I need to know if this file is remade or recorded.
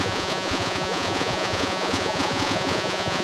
remade